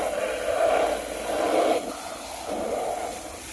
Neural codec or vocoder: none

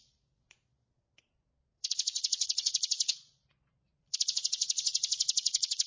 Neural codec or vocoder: vocoder, Vocos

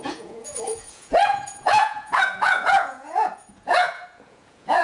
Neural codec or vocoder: vocoder, Vocos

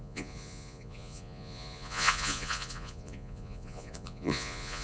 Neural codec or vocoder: vocoder, Vocos